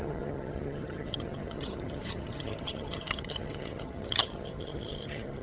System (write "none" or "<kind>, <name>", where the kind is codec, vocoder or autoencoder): vocoder, HiFi-GAN